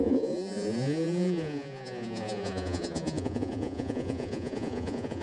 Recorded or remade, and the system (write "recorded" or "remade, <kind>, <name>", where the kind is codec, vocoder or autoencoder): remade, vocoder, Vocos